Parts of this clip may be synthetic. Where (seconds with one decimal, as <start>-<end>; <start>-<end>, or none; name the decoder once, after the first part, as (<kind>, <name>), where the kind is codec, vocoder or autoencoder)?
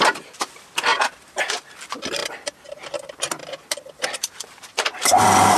0.0-0.9 (vocoder, BigVGAN v2); 1.7-3.4; 3.9-5.6